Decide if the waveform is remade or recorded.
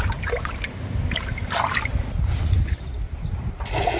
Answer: recorded